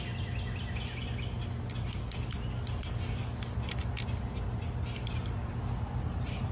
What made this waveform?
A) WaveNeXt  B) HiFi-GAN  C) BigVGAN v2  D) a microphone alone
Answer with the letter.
D